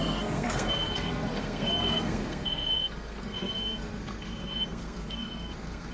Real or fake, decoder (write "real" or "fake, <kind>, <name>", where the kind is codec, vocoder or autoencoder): fake, codec, SNAC